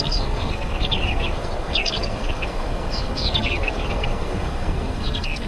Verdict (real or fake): fake